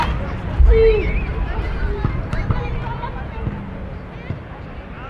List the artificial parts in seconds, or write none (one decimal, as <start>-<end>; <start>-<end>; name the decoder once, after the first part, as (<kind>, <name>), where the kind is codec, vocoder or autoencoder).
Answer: none